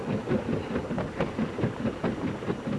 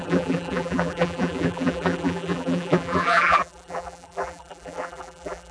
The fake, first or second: second